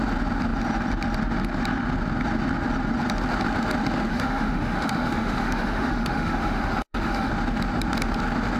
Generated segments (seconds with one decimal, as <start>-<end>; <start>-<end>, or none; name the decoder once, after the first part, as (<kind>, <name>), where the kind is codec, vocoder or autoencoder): 4.1-7.3 (autoencoder, DAC-VAE)